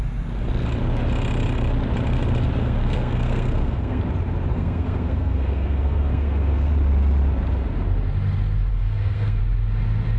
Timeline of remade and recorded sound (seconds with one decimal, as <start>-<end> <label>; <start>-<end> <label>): 0.0-2.6 recorded; 2.6-4.0 remade; 4.0-4.5 recorded; 4.5-6.7 remade; 6.7-8.7 recorded; 8.7-9.4 remade; 9.4-10.2 recorded